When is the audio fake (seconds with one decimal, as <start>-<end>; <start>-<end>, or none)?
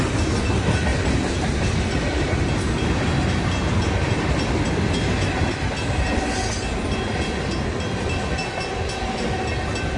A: 0.9-1.8